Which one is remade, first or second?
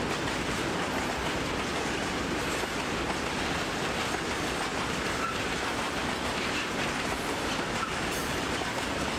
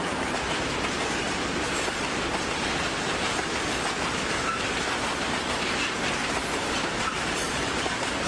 first